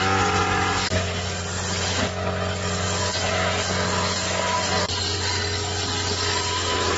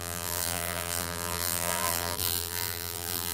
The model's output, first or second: second